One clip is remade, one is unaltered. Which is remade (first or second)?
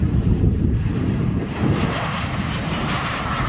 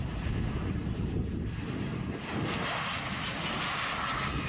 first